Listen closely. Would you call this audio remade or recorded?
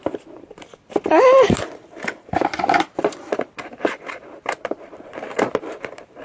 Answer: remade